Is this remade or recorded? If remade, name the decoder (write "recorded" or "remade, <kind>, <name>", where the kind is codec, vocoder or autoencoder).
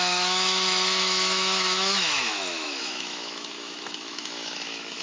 remade, autoencoder, DAC-VAE